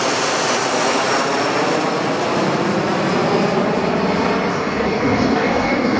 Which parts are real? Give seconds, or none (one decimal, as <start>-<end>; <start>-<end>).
0.0-4.5